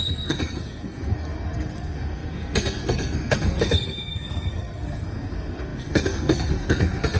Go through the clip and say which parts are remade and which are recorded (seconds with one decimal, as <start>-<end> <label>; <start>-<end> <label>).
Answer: 0.0-7.2 remade